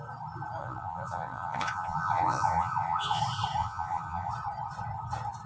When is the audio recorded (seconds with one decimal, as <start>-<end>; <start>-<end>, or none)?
0.0-0.6; 3.2-3.6; 4.3-5.5